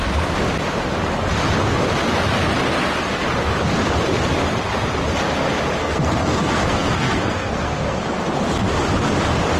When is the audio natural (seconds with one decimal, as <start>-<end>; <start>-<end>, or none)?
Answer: 0.0-5.8; 8.0-9.6